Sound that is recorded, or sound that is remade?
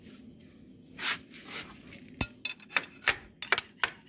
recorded